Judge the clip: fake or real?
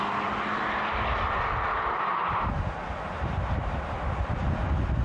real